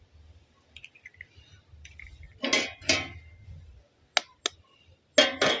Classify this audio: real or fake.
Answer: real